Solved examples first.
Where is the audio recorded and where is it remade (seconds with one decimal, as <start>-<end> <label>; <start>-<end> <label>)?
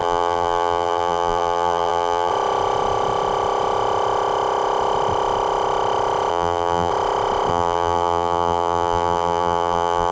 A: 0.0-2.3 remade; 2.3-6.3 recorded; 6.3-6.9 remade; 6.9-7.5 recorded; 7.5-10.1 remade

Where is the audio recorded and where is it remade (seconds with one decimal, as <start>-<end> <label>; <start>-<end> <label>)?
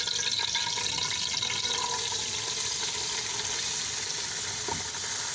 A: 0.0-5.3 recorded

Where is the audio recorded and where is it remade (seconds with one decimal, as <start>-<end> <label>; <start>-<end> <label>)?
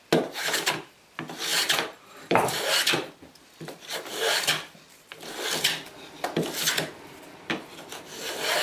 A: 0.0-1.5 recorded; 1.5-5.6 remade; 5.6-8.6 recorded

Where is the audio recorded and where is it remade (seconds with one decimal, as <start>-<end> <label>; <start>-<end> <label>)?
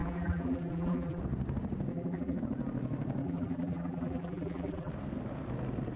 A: 0.0-1.2 remade; 1.2-1.9 recorded; 1.9-2.4 remade; 2.4-3.2 recorded; 3.2-4.9 remade; 4.9-6.0 recorded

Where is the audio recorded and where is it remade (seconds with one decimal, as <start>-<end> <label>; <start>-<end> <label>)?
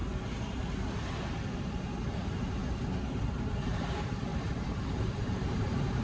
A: 0.0-1.7 recorded; 1.7-2.6 remade; 2.6-3.5 recorded; 3.5-6.0 remade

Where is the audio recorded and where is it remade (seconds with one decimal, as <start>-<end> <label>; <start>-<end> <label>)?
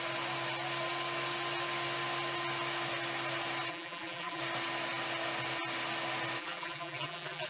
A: 0.0-3.7 recorded; 3.7-4.4 remade; 4.4-6.4 recorded; 6.4-7.5 remade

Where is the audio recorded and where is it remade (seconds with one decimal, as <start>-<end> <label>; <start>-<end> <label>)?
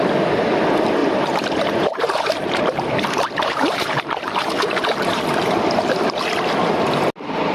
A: 0.0-1.0 recorded; 1.0-5.2 remade; 5.2-7.5 recorded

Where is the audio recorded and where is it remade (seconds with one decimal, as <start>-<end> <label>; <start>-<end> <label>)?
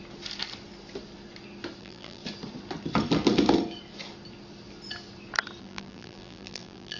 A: 0.0-1.8 recorded; 1.8-2.2 remade; 2.2-5.6 recorded; 5.6-7.0 remade